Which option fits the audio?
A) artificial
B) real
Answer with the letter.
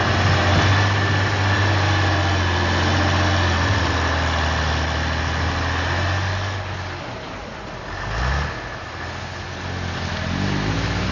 B